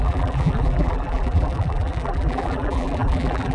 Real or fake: fake